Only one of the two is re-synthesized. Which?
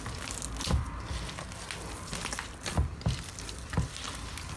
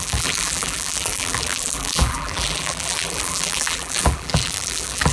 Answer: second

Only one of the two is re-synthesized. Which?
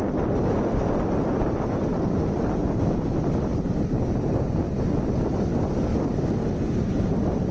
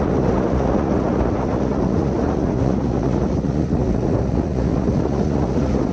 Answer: second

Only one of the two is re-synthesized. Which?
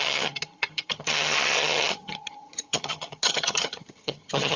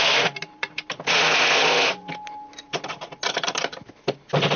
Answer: first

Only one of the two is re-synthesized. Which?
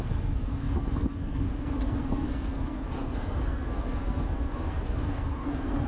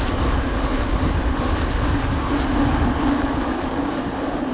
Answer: first